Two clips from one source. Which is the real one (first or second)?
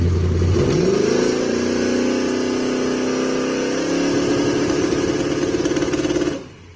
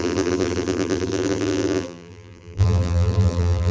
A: first